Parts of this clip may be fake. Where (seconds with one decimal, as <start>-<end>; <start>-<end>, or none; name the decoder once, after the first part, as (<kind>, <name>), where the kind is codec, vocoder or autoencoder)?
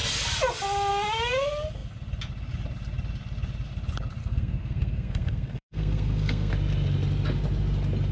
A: 4.2-6.5 (codec, SNAC)